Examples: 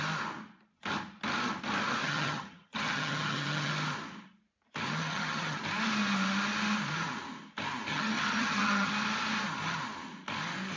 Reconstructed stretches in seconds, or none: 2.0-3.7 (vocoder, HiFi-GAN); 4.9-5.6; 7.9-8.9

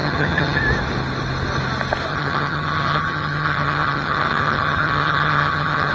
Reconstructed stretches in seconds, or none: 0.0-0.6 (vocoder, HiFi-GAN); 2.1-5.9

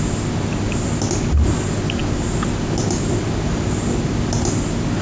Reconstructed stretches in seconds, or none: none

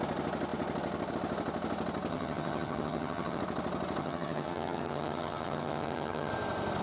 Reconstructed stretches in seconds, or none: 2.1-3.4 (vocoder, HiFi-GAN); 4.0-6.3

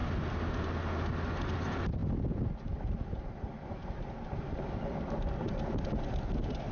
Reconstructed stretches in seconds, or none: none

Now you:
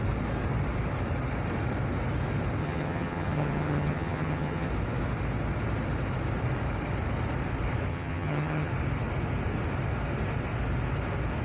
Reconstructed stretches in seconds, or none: 2.6-4.7 (vocoder, HiFi-GAN); 7.9-8.7